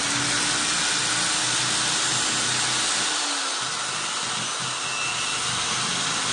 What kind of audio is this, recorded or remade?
recorded